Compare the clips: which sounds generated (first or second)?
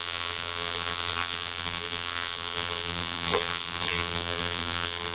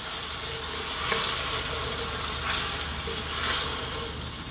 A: first